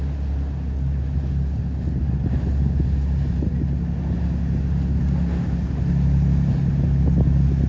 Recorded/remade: recorded